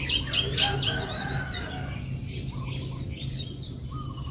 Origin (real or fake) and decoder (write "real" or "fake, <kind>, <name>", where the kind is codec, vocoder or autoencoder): real